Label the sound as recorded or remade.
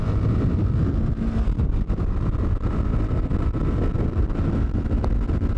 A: recorded